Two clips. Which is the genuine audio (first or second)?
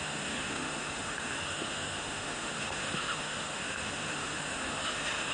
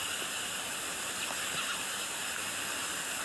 second